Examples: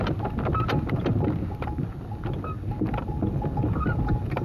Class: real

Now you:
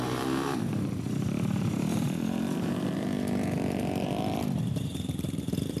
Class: fake